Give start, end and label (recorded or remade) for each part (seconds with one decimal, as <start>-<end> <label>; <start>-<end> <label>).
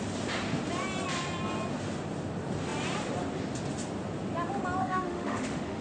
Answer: 0.0-4.8 recorded; 4.8-5.8 remade